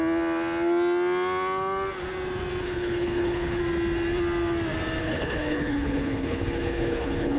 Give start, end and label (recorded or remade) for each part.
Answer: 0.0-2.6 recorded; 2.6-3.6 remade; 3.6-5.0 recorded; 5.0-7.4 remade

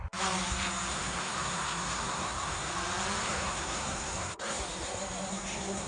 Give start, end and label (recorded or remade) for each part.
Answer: 0.0-0.9 recorded; 0.9-2.7 remade; 2.7-3.2 recorded; 3.2-4.6 remade; 4.6-5.3 recorded; 5.3-5.9 remade